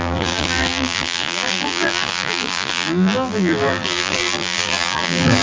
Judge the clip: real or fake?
fake